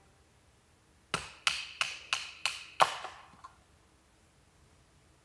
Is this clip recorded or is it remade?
recorded